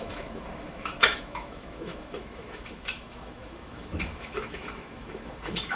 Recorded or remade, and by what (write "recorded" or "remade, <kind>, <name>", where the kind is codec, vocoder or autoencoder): remade, autoencoder, DAC-VAE